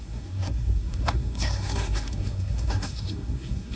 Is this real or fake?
fake